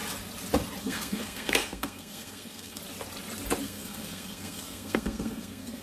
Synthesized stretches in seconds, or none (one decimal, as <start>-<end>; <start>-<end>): 0.8-2.8; 3.6-5.8